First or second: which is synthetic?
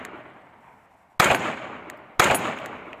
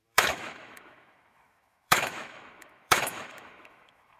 second